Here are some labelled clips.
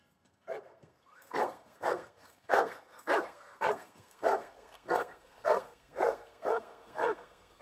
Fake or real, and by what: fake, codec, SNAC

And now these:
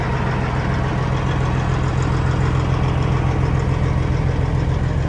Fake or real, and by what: real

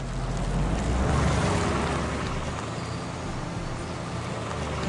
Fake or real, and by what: real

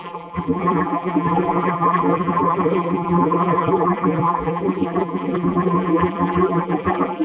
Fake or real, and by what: fake, vocoder, BigVGAN v2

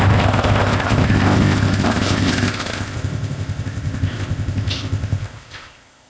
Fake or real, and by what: fake, codec, ZipCodec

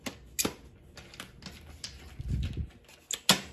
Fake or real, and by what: real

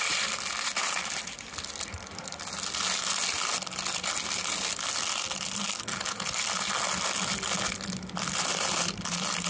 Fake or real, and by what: real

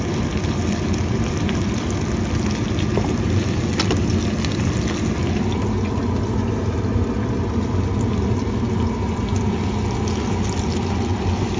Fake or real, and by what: real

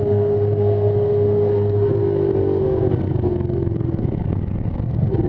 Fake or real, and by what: fake, codec, SNAC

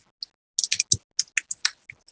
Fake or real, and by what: real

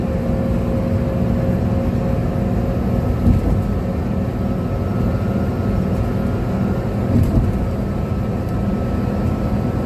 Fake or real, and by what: real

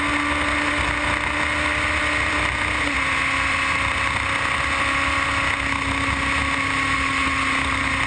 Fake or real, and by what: real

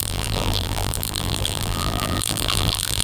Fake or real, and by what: fake, vocoder, BigVGAN v2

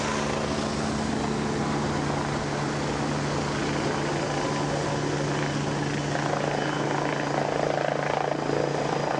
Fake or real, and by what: real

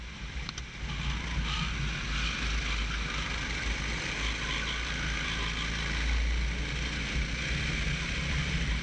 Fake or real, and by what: real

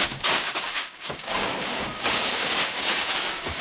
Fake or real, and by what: fake, codec, DAC